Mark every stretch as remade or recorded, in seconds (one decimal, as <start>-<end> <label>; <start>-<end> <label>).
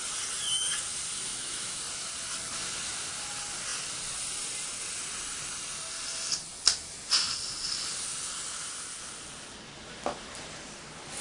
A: 0.0-1.3 recorded; 1.3-1.8 remade; 1.8-11.2 recorded